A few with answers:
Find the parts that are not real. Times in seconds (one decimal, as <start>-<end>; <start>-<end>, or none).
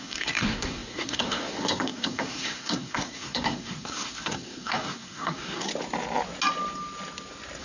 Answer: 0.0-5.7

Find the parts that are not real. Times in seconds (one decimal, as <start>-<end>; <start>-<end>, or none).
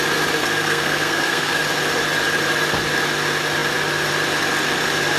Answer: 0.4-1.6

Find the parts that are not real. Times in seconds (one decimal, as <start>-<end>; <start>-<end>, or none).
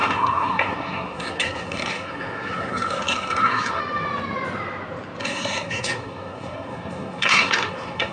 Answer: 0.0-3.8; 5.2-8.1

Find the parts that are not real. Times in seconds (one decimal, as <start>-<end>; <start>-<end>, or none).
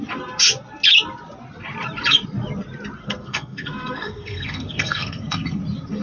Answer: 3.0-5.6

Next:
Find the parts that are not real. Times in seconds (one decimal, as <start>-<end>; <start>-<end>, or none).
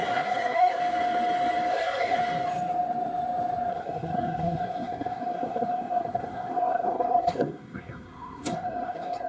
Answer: 0.0-0.8; 1.7-2.2; 3.7-9.3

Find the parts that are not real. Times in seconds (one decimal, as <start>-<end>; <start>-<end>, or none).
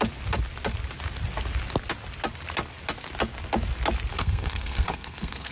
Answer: 4.1-5.5